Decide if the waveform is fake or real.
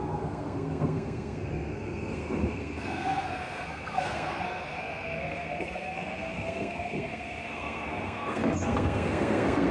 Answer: fake